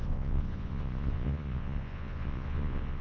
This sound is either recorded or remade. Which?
remade